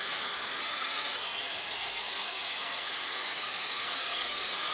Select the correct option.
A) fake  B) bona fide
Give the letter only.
A